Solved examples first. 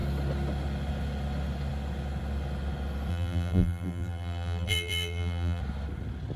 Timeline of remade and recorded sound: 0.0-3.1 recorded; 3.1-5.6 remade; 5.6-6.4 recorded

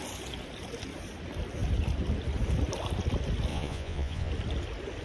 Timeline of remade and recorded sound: 0.0-3.5 recorded; 3.5-4.3 remade; 4.3-5.0 recorded

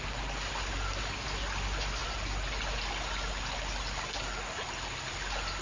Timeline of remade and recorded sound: 0.0-5.6 recorded

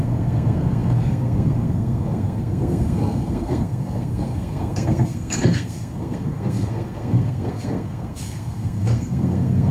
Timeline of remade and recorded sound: 0.0-9.7 remade

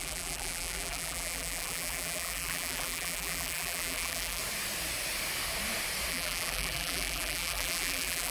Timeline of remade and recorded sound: 0.0-4.4 remade; 4.4-6.1 recorded; 6.1-8.3 remade

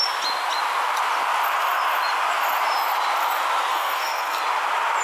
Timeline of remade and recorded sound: 0.0-3.7 recorded; 3.7-4.4 remade; 4.4-5.0 recorded

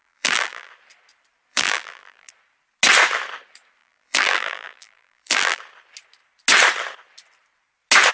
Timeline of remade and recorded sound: 0.0-0.7 remade; 0.7-1.5 recorded; 1.5-2.3 remade; 2.3-3.8 recorded; 3.8-5.6 remade; 5.6-8.1 recorded

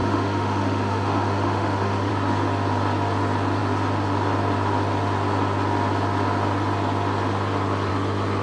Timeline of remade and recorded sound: 0.0-2.1 remade; 2.1-8.4 recorded